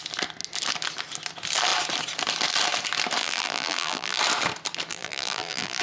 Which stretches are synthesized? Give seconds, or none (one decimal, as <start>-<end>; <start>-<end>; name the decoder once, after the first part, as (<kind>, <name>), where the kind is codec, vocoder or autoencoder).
3.2-4.2 (vocoder, BigVGAN v2); 4.9-5.8